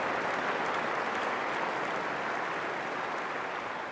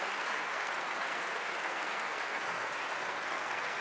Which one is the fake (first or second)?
second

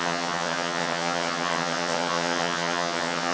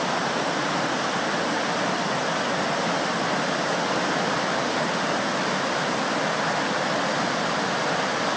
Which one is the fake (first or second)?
first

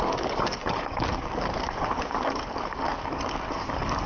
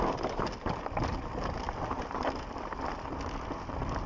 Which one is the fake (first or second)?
first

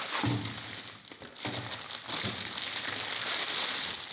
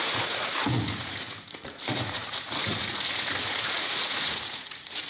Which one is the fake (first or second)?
second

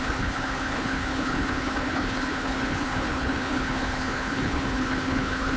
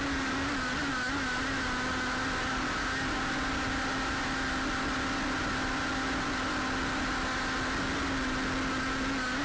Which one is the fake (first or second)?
first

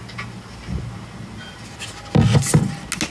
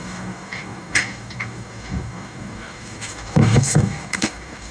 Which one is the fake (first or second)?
second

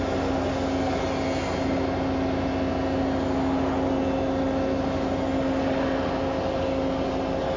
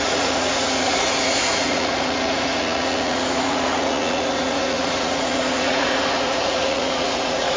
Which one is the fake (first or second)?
second